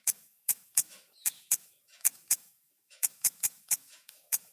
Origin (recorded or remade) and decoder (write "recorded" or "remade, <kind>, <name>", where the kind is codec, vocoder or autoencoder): remade, autoencoder, DAC-VAE